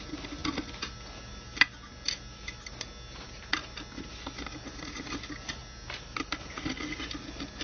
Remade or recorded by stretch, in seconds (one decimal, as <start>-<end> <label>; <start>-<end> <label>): 0.0-7.6 recorded